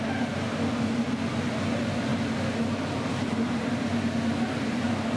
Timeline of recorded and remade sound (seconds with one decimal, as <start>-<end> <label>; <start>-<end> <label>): 0.0-5.2 recorded